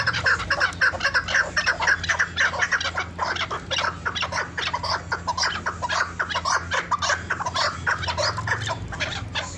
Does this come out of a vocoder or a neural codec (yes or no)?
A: no